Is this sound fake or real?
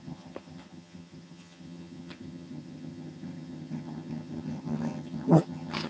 fake